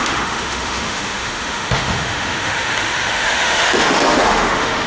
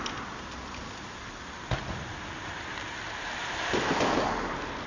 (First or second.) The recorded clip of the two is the second